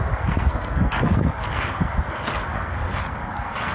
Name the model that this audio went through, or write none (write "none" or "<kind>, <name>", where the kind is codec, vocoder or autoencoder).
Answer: codec, SNAC